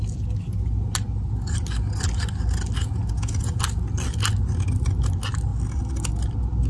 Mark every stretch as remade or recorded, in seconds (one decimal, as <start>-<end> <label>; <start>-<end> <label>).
0.0-2.8 recorded; 2.8-3.6 remade; 3.6-6.7 recorded